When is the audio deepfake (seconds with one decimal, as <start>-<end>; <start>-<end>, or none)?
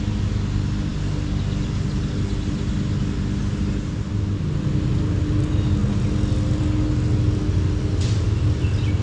none